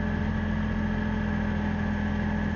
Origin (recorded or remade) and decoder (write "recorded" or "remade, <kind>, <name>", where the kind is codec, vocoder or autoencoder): recorded